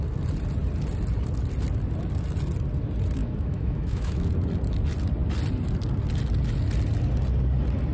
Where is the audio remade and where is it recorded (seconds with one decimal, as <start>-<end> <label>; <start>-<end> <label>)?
0.0-3.2 recorded; 3.2-4.3 remade; 4.3-7.9 recorded